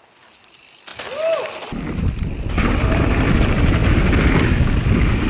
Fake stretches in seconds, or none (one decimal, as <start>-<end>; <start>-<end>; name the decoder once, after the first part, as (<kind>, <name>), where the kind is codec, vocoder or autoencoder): none

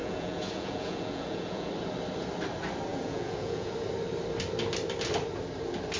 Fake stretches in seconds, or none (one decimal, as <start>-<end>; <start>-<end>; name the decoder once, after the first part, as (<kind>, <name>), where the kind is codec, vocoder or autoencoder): 0.0-1.7 (vocoder, Vocos); 2.9-3.7

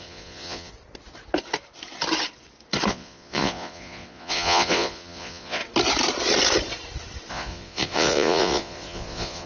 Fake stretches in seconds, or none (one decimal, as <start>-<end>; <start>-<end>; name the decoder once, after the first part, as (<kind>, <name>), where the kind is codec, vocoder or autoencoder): 0.0-0.7 (vocoder, Vocos); 2.9-5.6; 7.3-9.5